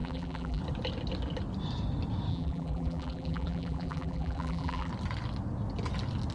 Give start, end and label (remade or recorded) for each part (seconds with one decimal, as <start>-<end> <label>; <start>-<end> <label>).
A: 0.0-0.6 remade; 0.6-2.3 recorded; 2.3-4.9 remade; 4.9-6.3 recorded